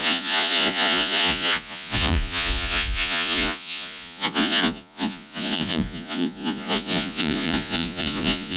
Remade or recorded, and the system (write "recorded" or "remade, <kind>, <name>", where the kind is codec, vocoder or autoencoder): remade, vocoder, Vocos